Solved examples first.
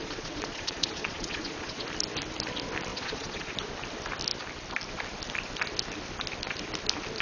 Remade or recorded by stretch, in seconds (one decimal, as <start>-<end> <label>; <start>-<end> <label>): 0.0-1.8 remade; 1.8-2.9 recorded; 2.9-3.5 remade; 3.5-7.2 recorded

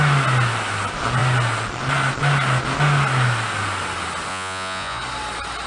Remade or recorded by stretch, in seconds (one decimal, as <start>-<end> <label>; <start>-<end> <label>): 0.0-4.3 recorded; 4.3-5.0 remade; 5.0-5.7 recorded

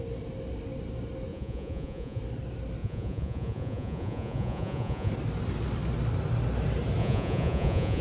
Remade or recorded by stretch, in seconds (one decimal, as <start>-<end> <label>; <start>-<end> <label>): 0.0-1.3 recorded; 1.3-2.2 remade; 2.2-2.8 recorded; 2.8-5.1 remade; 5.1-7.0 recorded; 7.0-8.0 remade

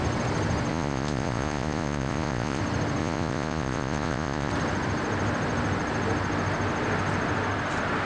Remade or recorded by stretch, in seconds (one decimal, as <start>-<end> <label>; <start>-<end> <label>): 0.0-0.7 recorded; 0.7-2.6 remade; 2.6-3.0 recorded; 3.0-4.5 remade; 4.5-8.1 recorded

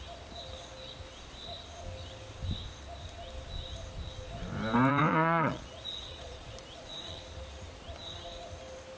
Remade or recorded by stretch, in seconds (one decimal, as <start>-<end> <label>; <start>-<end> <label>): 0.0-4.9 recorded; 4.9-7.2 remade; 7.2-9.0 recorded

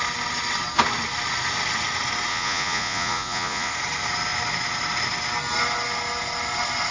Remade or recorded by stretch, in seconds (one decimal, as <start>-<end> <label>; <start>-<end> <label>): 0.0-2.3 recorded; 2.3-3.7 remade; 3.7-6.9 recorded